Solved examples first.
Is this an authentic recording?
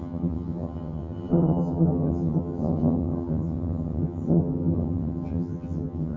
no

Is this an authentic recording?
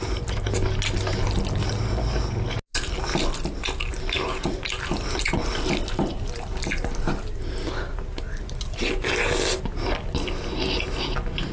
yes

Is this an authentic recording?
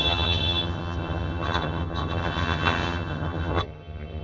no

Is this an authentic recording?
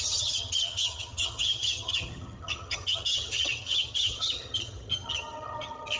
no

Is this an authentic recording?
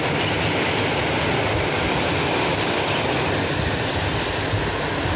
yes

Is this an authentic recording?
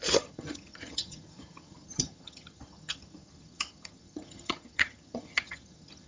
no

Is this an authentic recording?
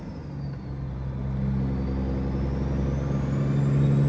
yes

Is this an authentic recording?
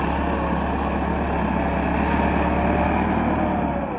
yes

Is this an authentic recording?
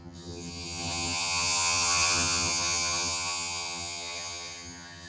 no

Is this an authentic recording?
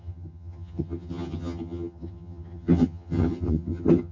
no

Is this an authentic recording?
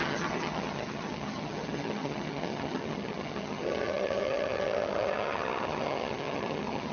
no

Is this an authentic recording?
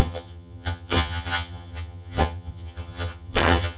no